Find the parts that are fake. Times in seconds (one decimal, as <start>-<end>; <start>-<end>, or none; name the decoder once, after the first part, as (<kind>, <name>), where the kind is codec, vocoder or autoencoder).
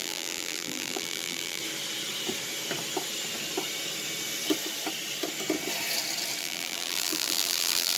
0.0-1.6 (vocoder, BigVGAN v2); 6.4-8.0